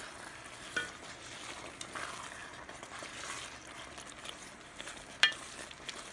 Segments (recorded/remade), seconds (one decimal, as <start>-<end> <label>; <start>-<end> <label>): 0.0-6.1 recorded